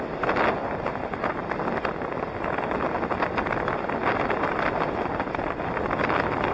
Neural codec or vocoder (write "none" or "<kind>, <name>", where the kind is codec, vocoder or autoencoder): none